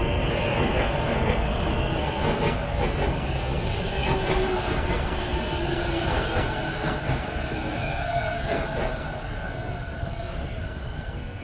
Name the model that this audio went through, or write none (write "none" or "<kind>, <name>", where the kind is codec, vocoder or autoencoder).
codec, SNAC